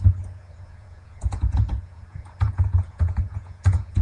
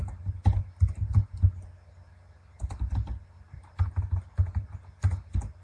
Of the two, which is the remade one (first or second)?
first